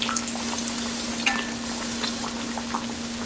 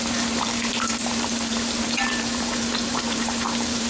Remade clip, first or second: second